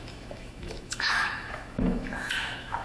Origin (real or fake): fake